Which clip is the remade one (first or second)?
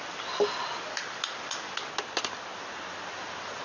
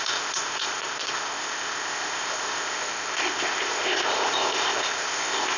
second